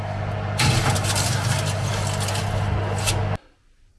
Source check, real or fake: real